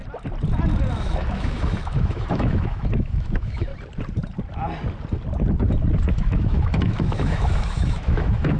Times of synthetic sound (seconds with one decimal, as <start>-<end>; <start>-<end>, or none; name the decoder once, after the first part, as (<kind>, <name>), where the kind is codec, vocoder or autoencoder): 0.9-3.7 (autoencoder, DAC-VAE); 6.1-8.6